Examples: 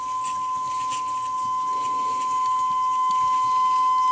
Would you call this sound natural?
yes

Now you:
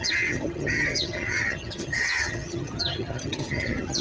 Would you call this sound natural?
no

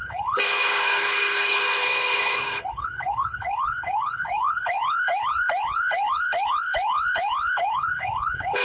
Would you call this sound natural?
no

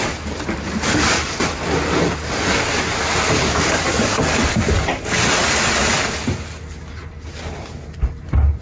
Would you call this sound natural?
yes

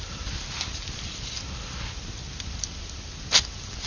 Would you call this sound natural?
yes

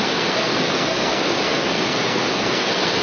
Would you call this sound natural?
no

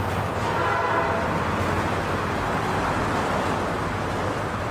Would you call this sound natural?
yes